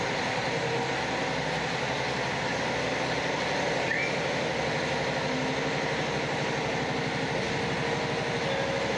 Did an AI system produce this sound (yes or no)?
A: no